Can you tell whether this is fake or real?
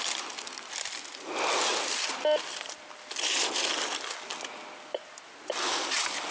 real